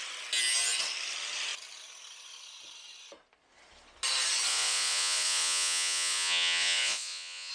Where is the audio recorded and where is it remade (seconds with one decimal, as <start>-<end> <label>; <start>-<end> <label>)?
0.0-4.5 recorded; 4.5-7.5 remade